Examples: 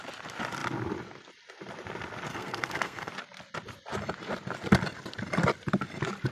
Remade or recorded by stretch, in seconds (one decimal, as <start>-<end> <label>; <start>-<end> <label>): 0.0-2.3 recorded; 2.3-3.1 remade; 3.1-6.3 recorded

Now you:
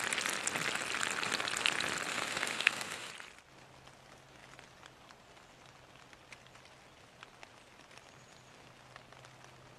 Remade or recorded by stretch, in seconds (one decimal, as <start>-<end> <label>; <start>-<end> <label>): 0.0-2.1 recorded; 2.1-3.1 remade; 3.1-9.8 recorded

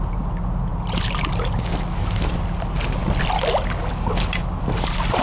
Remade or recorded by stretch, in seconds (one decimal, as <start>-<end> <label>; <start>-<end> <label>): 0.0-5.2 recorded

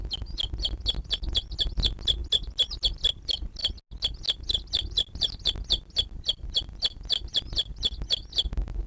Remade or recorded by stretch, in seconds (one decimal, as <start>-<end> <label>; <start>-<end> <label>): 0.0-8.9 recorded

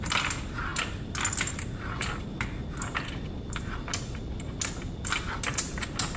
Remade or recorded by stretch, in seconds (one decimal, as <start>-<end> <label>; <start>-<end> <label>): 0.0-6.2 recorded

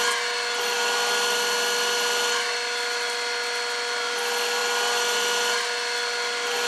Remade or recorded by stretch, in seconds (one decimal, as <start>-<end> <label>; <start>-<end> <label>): 0.0-6.7 recorded

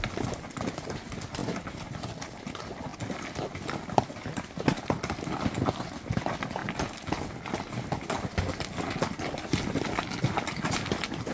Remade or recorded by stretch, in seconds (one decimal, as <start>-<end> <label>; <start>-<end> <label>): 0.0-11.3 recorded

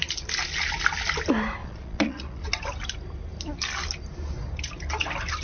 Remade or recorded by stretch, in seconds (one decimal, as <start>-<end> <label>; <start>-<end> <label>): 0.0-1.6 recorded; 1.6-2.5 remade; 2.5-5.4 recorded